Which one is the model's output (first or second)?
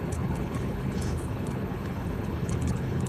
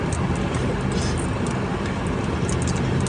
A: first